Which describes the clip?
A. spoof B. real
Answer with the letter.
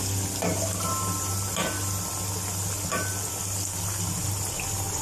B